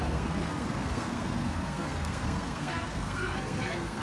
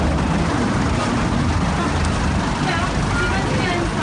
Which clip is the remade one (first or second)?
first